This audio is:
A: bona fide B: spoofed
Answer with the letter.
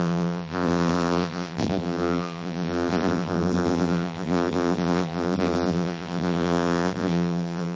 B